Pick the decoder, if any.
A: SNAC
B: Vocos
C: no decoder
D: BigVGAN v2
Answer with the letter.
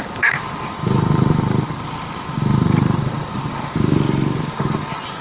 C